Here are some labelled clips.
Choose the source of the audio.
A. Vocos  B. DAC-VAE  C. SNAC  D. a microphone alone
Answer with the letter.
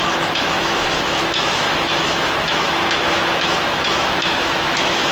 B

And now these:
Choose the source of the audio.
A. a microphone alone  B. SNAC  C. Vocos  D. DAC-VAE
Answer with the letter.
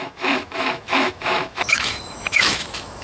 D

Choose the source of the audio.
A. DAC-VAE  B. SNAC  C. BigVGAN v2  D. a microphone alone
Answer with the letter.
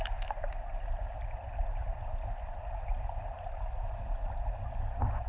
D